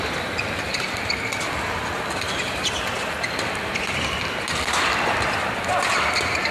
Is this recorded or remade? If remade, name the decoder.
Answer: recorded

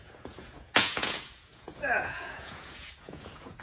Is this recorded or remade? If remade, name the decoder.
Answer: remade, vocoder, Vocos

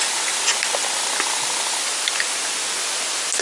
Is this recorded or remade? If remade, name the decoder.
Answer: recorded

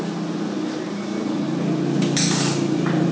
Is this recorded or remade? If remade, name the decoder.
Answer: recorded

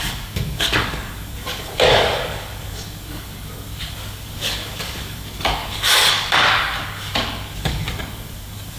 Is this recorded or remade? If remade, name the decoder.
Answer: remade, codec, DAC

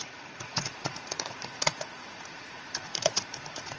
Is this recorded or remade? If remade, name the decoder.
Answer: remade, vocoder, Vocos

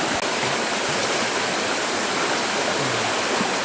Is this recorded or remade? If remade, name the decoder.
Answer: recorded